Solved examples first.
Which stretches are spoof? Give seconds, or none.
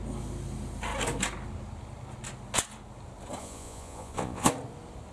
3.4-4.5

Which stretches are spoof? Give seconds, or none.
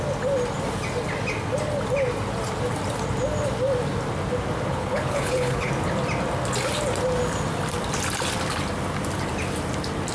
4.7-5.7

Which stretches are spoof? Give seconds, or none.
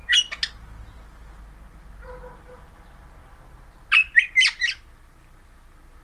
none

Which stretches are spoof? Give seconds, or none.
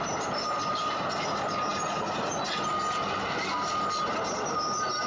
none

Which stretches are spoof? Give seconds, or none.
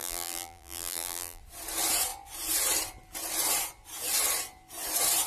0.0-1.4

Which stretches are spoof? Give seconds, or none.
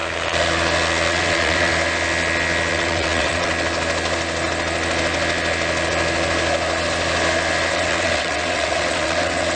1.1-1.7; 2.7-3.5; 7.7-9.6